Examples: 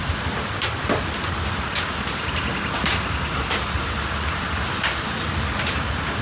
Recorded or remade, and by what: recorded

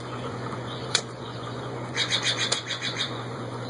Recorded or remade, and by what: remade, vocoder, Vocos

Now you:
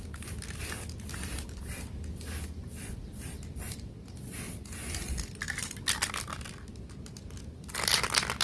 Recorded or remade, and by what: recorded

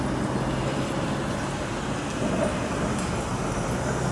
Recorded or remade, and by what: recorded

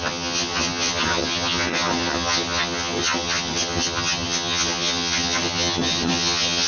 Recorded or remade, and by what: remade, vocoder, HiFi-GAN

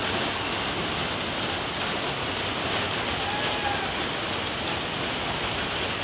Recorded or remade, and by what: recorded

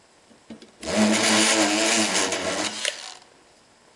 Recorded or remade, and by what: recorded